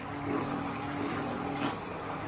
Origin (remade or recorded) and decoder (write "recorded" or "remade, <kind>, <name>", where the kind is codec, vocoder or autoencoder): recorded